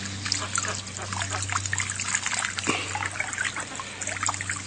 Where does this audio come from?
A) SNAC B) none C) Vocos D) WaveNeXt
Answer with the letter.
B